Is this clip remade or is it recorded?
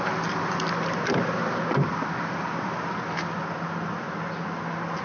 recorded